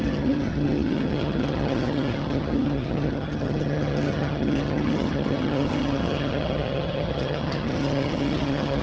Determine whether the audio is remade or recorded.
remade